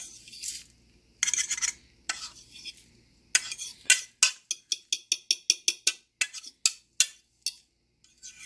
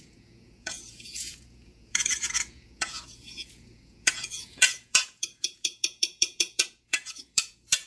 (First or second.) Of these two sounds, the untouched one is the first